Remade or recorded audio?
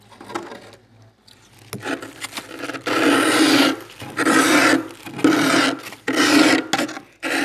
recorded